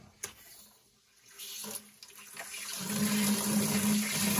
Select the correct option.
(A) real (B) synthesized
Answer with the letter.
A